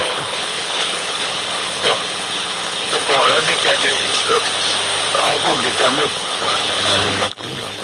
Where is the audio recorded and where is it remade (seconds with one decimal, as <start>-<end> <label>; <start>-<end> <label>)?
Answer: 0.0-4.4 remade; 4.4-5.2 recorded; 5.2-7.8 remade